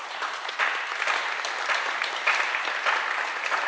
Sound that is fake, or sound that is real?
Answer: real